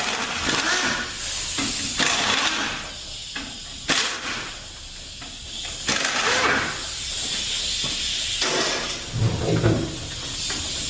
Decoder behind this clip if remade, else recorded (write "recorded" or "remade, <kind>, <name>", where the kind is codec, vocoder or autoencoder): recorded